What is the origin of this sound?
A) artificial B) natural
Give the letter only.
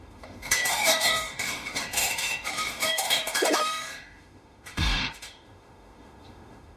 A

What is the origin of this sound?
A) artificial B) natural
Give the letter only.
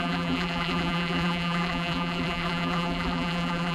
A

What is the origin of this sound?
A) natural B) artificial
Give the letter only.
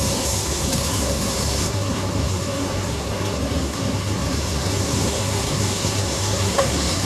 B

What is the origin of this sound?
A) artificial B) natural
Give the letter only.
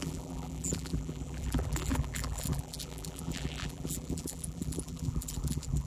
A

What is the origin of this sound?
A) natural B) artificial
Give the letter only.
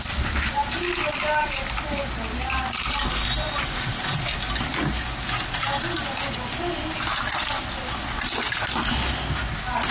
A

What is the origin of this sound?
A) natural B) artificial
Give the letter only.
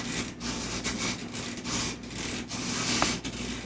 A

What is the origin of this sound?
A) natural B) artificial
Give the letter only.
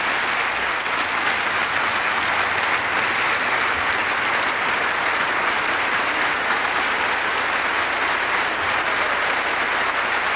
A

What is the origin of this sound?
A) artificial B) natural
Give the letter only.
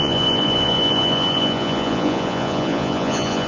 A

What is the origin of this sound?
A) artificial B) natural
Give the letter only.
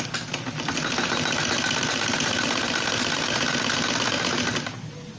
B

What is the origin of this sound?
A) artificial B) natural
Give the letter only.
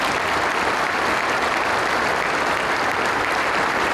B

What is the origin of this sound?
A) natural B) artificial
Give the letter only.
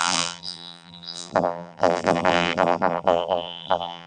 B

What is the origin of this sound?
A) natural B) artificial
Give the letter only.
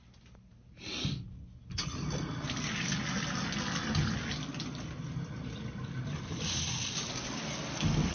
A